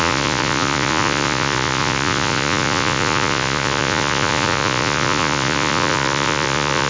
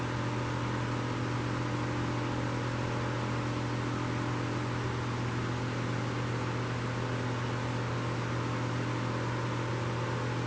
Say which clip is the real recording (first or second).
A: second